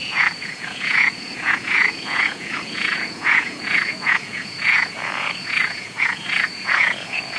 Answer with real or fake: fake